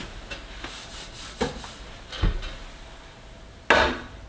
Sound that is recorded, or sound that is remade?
recorded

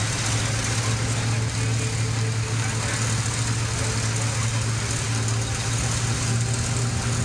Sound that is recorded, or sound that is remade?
recorded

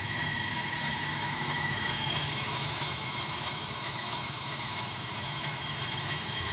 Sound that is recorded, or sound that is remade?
remade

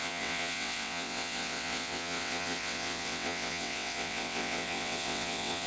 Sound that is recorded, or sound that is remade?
remade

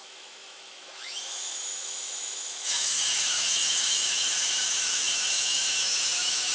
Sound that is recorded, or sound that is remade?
remade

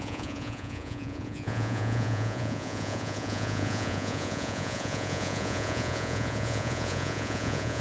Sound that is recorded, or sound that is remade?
remade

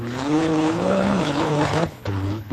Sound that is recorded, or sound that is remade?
remade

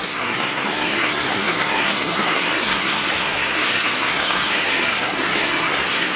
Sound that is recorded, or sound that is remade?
remade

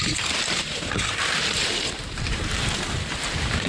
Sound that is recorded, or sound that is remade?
remade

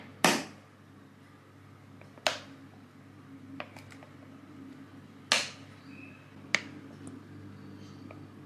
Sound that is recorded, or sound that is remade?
recorded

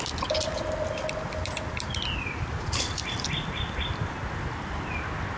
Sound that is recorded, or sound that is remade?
recorded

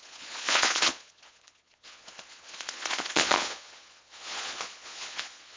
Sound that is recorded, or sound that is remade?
remade